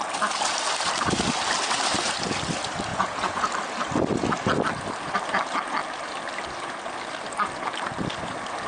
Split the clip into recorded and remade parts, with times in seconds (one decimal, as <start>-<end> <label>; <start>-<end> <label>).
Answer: 0.0-2.9 recorded; 2.9-3.5 remade; 3.5-8.7 recorded